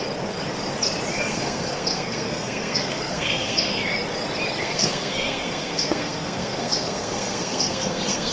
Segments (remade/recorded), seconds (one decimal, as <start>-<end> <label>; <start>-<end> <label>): 0.0-1.1 recorded; 1.1-3.7 remade; 3.7-4.6 recorded; 4.6-8.3 remade